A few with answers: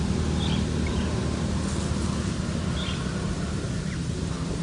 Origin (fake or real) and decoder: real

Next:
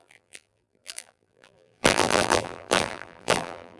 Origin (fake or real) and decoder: fake, vocoder, BigVGAN v2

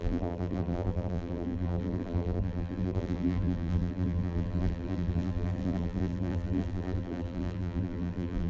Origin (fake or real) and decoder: fake, vocoder, BigVGAN v2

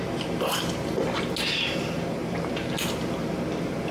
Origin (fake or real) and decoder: real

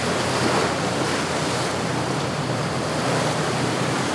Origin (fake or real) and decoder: fake, vocoder, BigVGAN v2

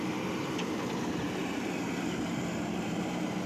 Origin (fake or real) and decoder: fake, vocoder, BigVGAN v2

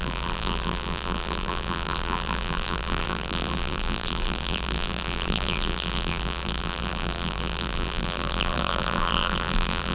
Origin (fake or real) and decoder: fake, vocoder, BigVGAN v2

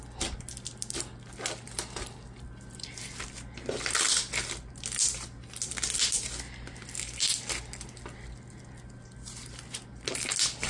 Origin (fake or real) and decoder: real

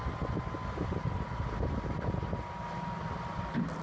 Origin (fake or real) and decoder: real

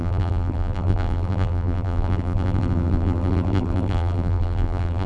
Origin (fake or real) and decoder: fake, vocoder, BigVGAN v2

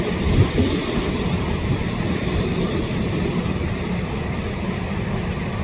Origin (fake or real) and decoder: fake, vocoder, BigVGAN v2